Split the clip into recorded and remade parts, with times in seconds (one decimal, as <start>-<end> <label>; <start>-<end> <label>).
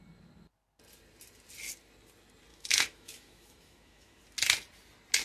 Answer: 0.0-2.5 recorded; 2.5-4.2 remade; 4.2-5.2 recorded